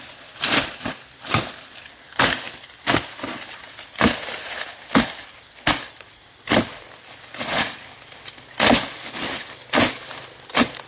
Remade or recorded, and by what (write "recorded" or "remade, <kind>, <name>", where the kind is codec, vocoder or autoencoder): recorded